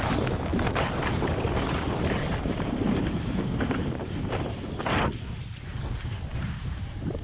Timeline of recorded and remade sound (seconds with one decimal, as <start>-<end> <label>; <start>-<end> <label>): 0.0-0.5 recorded; 0.5-4.8 remade; 4.8-6.3 recorded; 6.3-7.2 remade

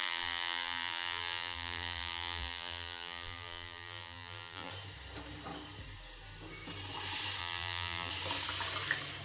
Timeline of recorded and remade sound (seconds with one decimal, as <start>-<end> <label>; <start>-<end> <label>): 0.0-4.7 remade; 4.7-7.4 recorded; 7.4-8.1 remade; 8.1-9.2 recorded

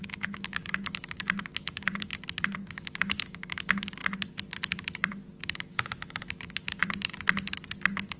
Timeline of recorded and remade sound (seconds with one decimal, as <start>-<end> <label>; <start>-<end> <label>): 0.0-2.1 remade; 2.1-2.7 recorded; 2.7-4.0 remade; 4.0-5.1 recorded; 5.1-6.8 remade; 6.8-8.2 recorded

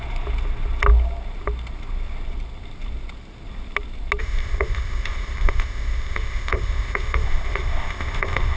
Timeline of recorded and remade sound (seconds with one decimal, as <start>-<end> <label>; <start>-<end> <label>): 0.0-4.2 recorded; 4.2-8.6 remade

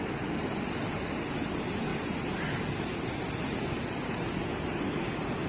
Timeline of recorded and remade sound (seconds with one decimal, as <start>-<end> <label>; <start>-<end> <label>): 0.0-5.5 recorded